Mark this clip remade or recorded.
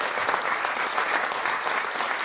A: recorded